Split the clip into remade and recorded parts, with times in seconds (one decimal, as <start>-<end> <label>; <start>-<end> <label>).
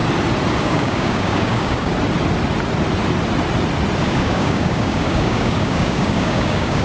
0.0-0.6 recorded; 0.6-1.9 remade; 1.9-4.0 recorded; 4.0-6.8 remade